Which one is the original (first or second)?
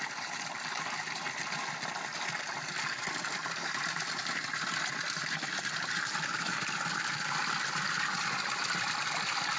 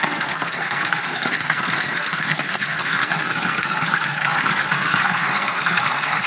first